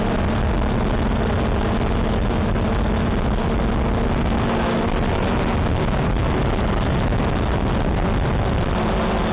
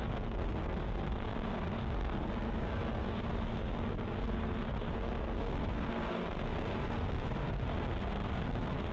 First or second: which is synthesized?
second